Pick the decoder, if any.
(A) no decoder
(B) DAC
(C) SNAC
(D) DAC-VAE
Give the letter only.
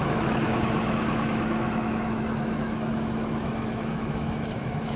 D